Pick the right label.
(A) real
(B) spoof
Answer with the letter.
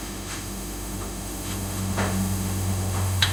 B